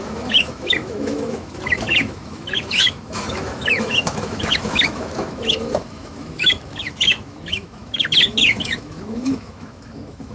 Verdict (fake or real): fake